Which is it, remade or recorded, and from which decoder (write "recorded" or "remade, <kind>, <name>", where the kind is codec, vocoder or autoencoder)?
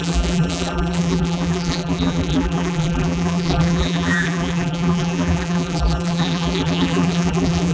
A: remade, vocoder, BigVGAN v2